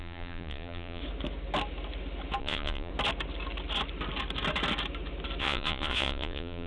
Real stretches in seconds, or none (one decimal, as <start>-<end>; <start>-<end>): 1.0-2.4; 2.9-5.4